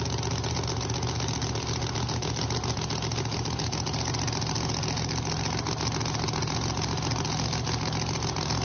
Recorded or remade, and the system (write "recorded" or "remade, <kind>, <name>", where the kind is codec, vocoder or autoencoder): recorded